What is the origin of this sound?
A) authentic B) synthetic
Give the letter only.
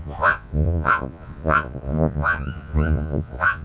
B